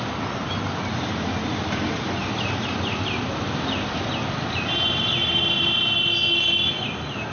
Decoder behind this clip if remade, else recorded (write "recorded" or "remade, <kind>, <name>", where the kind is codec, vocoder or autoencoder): recorded